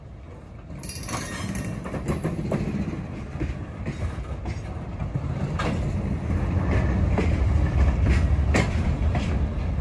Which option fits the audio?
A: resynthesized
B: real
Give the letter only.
B